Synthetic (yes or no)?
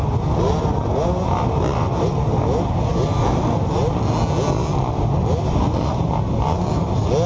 no